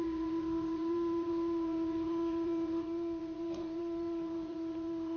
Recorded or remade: remade